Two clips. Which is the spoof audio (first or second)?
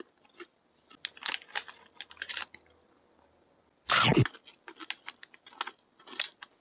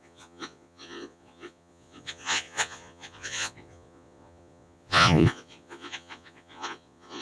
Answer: second